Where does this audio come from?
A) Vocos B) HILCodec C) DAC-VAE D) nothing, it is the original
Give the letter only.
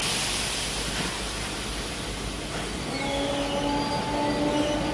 D